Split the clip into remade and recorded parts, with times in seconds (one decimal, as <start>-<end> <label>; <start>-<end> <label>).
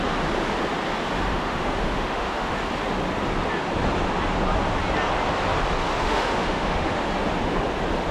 0.0-1.3 recorded; 1.3-2.5 remade; 2.5-5.9 recorded; 5.9-7.0 remade; 7.0-8.1 recorded